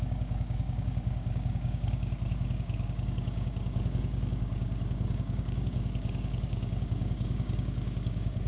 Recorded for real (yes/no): no